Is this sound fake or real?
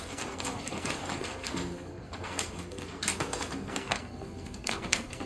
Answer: fake